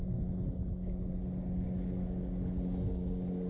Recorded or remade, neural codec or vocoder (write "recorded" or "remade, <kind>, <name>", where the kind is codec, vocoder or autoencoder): recorded